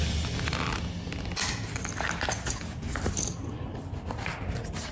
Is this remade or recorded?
recorded